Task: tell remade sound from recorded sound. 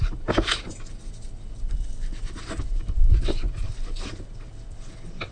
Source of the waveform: remade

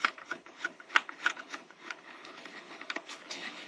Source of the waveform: remade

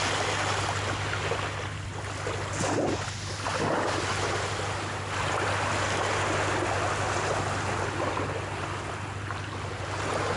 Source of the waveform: recorded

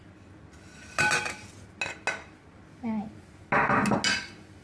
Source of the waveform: recorded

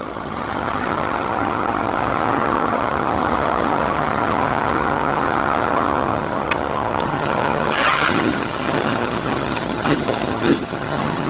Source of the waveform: remade